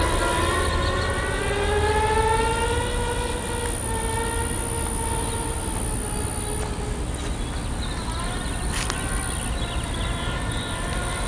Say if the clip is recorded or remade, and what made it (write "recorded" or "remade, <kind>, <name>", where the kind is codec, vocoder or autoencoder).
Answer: recorded